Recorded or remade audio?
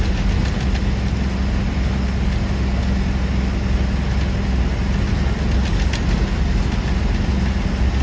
recorded